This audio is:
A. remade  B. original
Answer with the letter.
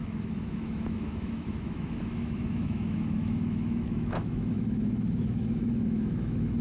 A